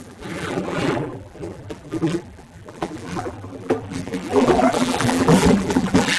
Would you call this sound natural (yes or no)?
no